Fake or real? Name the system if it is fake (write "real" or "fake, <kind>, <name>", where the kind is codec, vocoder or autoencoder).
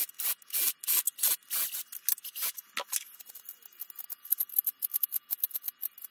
real